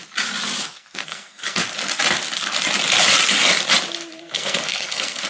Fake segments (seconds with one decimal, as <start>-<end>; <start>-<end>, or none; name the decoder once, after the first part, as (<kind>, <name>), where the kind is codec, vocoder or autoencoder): 0.6-1.6 (codec, SNAC); 4.2-5.3